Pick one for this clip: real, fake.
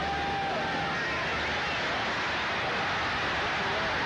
real